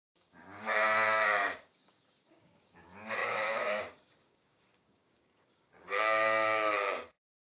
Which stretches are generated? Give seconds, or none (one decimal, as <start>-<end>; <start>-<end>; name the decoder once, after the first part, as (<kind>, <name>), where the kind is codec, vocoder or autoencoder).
0.0-7.6 (codec, DAC)